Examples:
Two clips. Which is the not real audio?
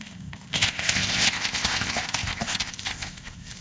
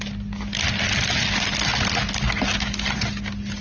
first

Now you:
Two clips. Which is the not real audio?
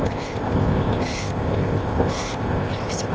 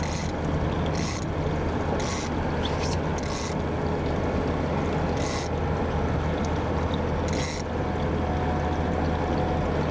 first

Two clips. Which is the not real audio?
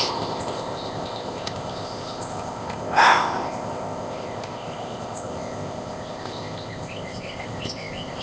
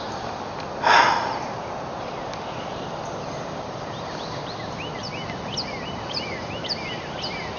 first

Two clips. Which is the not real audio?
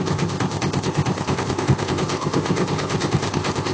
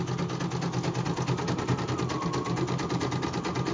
first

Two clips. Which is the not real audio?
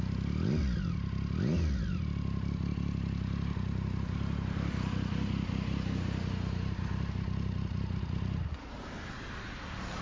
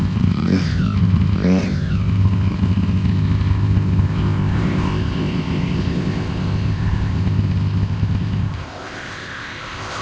second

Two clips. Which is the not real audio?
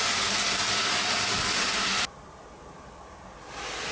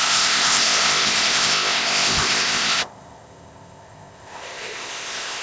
second